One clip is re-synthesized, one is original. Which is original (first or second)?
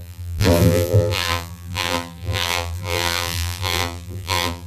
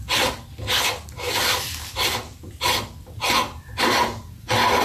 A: second